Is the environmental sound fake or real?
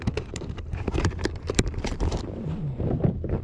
fake